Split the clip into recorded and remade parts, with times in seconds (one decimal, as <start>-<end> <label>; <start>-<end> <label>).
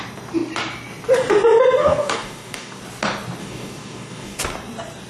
0.0-1.8 recorded; 1.8-2.8 remade; 2.8-3.4 recorded; 3.4-4.4 remade; 4.4-5.1 recorded